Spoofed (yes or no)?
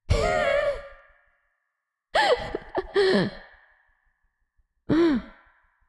no